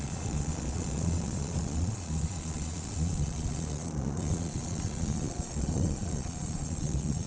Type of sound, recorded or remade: remade